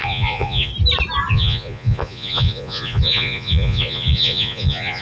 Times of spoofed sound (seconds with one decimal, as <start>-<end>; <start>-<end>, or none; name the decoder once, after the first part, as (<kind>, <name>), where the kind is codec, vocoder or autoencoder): 0.0-0.7 (vocoder, Vocos); 1.3-5.0

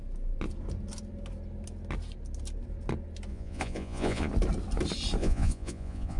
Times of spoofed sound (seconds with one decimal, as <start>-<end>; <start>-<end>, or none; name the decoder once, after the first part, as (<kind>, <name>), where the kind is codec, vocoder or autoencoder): 3.3-4.3 (vocoder, Vocos); 5.2-6.2

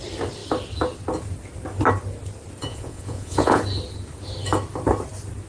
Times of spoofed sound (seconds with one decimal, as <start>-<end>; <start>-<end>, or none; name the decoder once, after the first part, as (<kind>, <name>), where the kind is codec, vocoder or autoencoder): 2.7-3.6 (vocoder, Vocos)

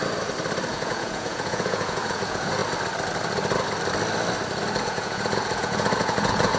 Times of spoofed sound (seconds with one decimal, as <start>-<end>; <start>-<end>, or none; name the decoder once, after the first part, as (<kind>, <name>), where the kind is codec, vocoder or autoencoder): 0.7-2.6 (vocoder, Vocos); 4.8-6.6

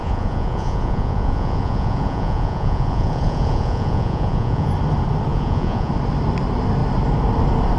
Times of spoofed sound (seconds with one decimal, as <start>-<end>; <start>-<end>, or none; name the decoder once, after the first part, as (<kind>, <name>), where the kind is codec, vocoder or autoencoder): 0.0-4.7 (vocoder, Vocos); 5.3-5.9

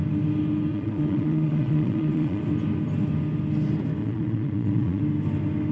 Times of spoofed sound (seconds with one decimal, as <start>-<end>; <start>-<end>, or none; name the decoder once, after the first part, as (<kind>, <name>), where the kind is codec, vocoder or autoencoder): 0.7-2.4 (vocoder, Vocos); 4.0-5.0